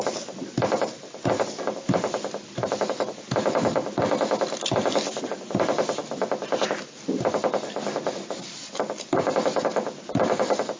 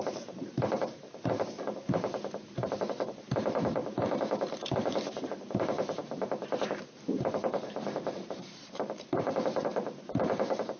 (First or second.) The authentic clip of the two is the first